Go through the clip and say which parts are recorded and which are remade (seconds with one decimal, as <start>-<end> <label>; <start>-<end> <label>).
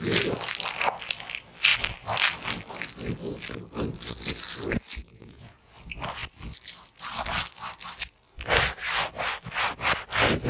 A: 0.0-5.0 recorded; 5.0-5.7 remade; 5.7-10.5 recorded